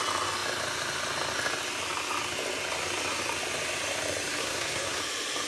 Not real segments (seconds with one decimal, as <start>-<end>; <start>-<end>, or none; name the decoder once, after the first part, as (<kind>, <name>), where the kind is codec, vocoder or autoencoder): 4.4-5.0 (codec, SNAC)